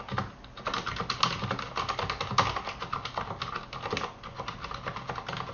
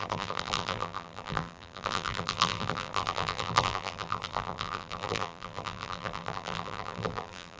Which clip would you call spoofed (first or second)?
second